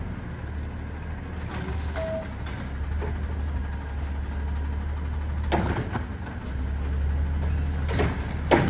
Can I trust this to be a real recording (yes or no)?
yes